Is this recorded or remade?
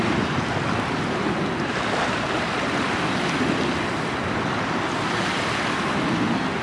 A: recorded